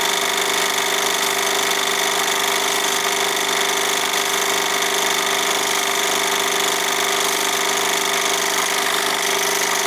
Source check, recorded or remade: recorded